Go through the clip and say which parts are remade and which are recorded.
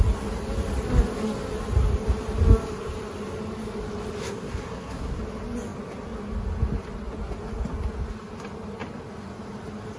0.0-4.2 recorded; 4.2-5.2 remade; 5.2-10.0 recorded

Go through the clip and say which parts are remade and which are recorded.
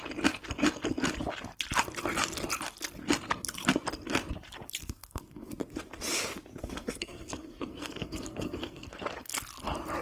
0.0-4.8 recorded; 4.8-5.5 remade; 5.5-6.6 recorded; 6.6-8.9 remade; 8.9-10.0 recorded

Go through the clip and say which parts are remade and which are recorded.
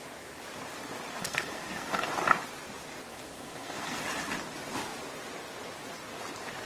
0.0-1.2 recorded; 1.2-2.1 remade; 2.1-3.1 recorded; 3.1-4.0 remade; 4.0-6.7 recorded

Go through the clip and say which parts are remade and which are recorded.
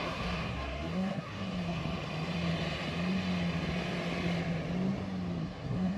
0.0-1.8 remade; 1.8-5.4 recorded; 5.4-6.0 remade